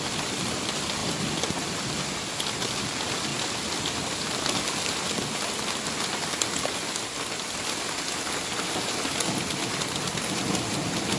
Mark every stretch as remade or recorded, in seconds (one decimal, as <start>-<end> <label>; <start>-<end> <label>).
0.0-11.2 recorded